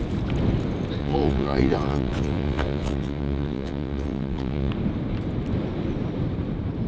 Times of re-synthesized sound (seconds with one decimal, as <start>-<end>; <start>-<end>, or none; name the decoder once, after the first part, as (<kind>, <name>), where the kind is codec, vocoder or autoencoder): 1.0-4.7 (vocoder, WaveNeXt)